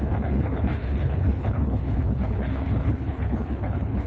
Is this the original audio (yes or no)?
no